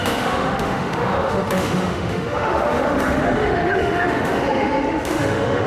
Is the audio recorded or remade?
remade